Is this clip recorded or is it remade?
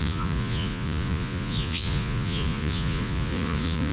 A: remade